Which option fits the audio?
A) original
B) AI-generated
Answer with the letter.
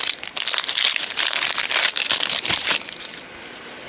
B